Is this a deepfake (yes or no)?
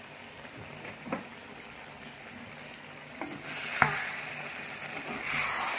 no